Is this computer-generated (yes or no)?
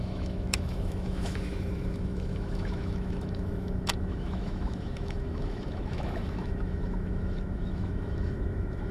yes